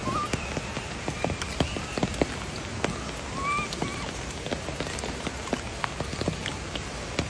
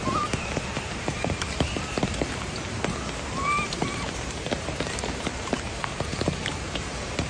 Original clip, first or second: first